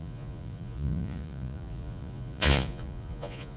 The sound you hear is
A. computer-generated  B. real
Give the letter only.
A